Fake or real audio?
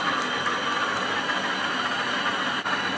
real